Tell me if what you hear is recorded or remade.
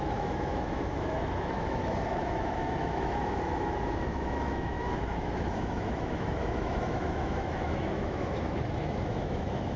remade